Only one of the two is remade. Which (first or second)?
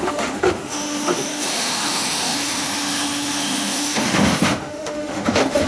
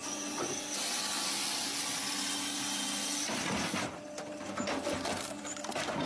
first